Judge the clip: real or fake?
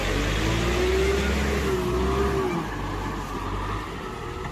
real